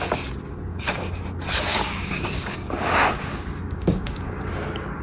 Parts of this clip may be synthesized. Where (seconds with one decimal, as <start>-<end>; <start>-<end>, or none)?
0.7-1.2; 1.7-5.0